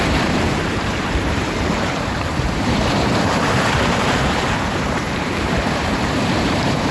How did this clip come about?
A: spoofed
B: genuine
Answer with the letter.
A